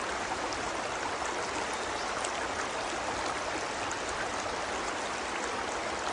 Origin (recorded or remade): recorded